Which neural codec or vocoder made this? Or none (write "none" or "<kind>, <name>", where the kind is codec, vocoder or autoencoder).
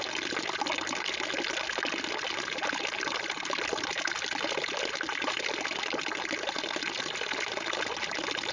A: none